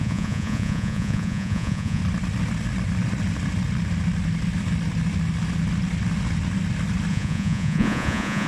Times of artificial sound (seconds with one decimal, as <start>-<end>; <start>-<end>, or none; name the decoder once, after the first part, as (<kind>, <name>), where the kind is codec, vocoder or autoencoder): 0.0-2.0 (vocoder, Vocos); 7.1-8.5